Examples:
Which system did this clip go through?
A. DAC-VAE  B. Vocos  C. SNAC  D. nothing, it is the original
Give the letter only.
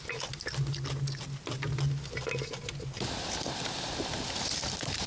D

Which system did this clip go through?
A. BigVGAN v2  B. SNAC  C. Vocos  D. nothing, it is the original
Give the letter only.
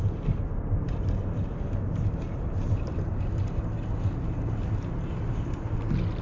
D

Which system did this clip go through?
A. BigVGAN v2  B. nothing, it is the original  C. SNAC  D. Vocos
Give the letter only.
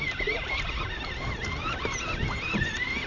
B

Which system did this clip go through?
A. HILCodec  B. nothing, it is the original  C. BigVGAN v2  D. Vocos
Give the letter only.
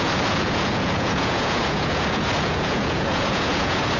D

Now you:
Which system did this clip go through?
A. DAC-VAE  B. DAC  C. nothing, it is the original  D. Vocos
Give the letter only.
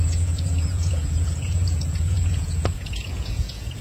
D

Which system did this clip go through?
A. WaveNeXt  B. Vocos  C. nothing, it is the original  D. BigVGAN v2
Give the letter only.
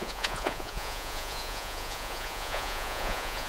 B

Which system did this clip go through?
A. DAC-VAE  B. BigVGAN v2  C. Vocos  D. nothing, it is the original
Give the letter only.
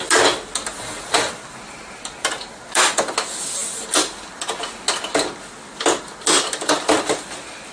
D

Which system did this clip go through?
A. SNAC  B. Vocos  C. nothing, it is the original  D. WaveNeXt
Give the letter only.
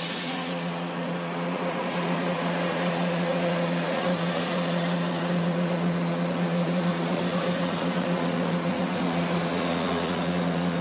B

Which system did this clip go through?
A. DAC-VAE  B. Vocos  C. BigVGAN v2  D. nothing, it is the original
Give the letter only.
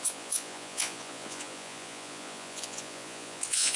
B